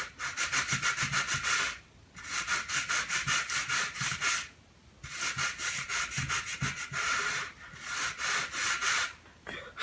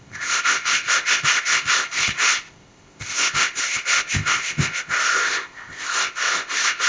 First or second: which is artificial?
second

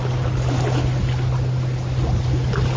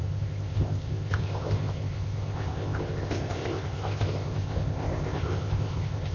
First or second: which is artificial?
second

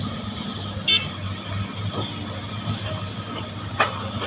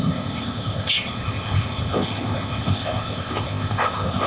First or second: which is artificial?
second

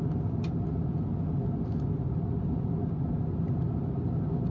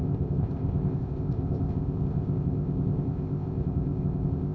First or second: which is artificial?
second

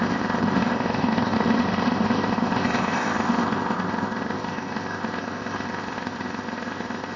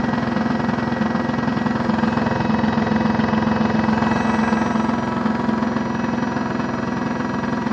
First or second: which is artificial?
first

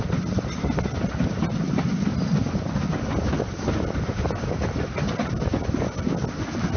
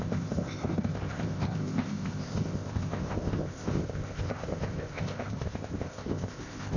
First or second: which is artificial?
second